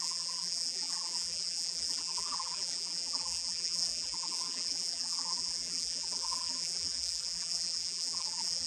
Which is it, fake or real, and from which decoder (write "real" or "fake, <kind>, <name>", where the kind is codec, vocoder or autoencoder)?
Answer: fake, vocoder, BigVGAN v2